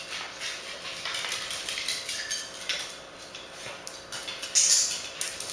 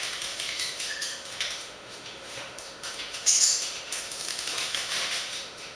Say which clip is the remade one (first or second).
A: second